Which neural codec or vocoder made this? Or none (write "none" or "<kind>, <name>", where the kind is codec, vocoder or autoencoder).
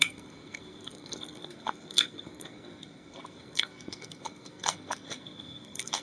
codec, SNAC